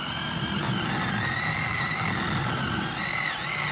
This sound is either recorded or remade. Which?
recorded